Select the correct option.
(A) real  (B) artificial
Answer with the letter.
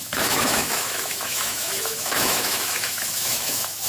B